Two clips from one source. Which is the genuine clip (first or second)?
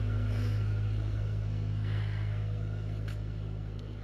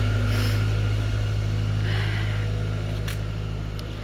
second